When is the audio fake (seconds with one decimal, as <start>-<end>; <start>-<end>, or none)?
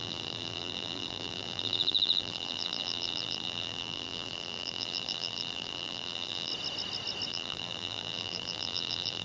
0.0-6.5; 7.3-9.2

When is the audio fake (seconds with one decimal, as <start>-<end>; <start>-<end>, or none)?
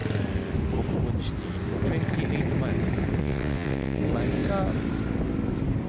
3.2-4.0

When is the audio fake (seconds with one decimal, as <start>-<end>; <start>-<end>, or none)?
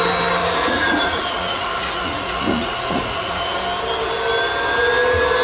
0.4-3.6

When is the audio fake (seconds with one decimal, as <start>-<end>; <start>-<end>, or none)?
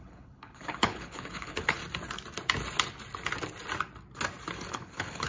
0.0-1.8; 4.7-5.3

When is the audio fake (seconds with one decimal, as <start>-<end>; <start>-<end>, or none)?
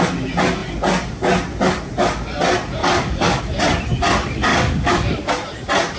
2.8-3.4; 4.5-5.3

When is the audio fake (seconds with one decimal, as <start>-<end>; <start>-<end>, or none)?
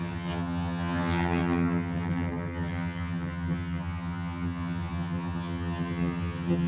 0.0-6.7